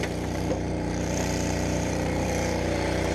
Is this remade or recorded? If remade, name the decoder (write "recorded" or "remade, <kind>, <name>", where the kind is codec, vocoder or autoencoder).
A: remade, vocoder, BigVGAN v2